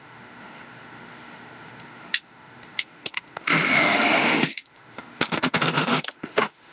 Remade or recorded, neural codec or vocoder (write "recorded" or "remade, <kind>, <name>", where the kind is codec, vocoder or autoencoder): remade, autoencoder, DAC-VAE